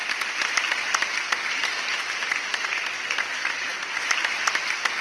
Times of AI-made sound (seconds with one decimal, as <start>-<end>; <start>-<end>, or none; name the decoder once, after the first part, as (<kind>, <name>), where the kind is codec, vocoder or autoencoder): none